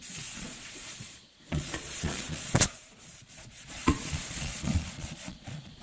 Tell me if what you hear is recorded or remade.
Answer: remade